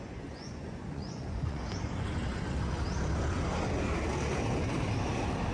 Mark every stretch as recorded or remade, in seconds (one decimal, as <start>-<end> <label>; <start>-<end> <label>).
0.0-2.2 remade; 2.2-5.5 recorded